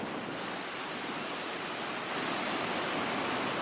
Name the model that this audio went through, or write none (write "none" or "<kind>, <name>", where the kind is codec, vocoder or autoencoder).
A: none